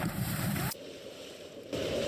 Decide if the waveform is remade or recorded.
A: remade